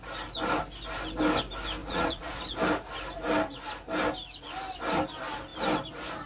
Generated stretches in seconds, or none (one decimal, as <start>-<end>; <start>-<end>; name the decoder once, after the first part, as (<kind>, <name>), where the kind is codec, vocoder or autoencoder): 1.8-2.4 (vocoder, Vocos)